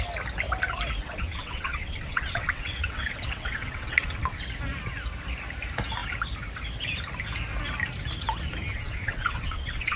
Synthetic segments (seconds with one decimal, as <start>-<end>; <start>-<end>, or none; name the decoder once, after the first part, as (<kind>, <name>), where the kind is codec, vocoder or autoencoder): 1.0-4.4 (vocoder, WaveNeXt); 8.7-10.0